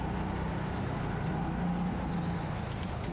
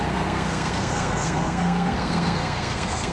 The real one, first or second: first